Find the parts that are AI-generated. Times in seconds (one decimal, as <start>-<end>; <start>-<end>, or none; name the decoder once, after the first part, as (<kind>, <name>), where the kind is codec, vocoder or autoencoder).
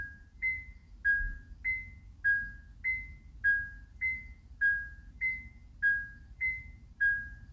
0.0-0.8 (vocoder, BigVGAN v2); 3.8-5.6; 6.2-7.5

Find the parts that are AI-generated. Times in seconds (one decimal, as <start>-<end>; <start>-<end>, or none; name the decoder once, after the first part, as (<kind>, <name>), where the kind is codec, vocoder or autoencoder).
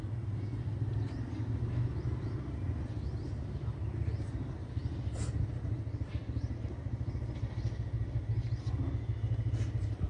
none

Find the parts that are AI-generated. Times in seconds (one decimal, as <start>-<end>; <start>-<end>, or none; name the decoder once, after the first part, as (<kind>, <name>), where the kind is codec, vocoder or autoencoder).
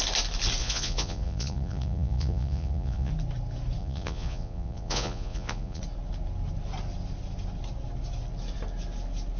0.6-3.1 (vocoder, Vocos); 3.8-5.8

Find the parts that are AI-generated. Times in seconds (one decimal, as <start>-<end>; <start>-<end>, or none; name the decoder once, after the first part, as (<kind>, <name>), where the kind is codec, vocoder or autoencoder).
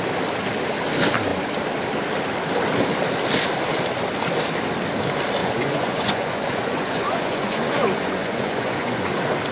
5.4-9.1 (vocoder, Vocos)